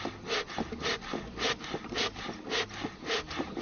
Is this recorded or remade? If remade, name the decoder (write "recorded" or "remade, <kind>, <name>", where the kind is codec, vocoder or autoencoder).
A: recorded